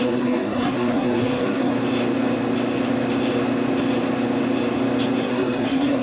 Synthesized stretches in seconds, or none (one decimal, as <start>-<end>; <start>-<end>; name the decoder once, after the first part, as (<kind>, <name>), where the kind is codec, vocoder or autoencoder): 0.0-1.7 (codec, SNAC); 5.2-6.0